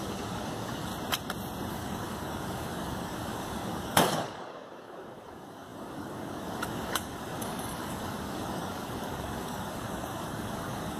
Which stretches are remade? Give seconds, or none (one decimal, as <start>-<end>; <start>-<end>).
0.0-0.9; 1.7-11.0